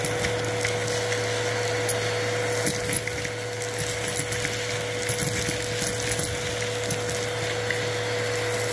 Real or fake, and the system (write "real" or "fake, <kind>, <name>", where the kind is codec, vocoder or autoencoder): real